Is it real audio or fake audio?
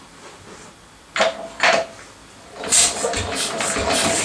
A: real